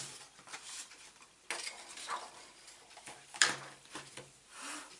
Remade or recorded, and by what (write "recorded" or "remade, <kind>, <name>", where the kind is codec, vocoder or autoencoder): recorded